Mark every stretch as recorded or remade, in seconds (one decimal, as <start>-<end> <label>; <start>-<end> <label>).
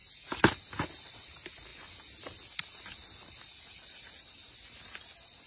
0.0-5.5 recorded